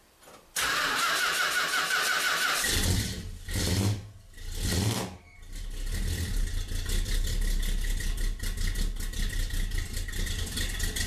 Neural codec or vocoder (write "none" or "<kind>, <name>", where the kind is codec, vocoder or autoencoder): none